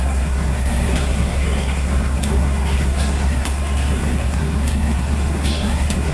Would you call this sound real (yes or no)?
no